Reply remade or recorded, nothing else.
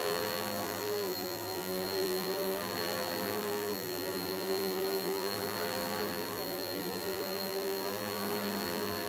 remade